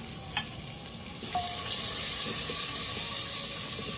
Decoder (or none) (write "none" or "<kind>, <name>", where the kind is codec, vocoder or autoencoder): none